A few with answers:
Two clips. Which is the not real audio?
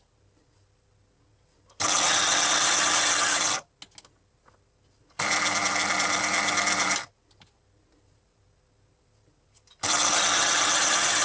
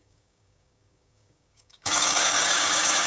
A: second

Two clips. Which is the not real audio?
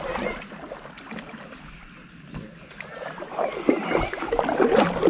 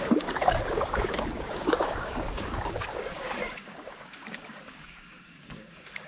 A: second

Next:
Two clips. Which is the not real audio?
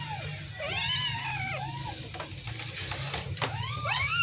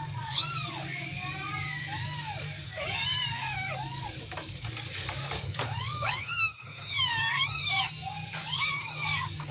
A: second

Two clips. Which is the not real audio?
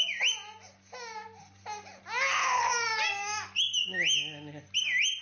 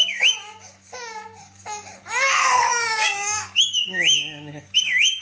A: second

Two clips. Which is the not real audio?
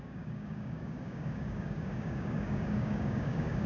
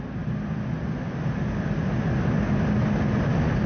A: first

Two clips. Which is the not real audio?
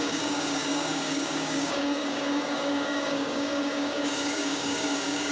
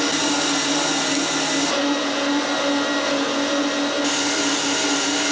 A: first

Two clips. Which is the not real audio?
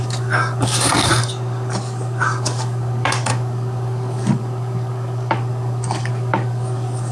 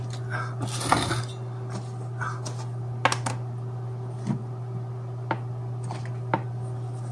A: first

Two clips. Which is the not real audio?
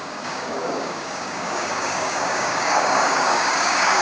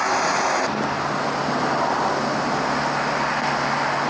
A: first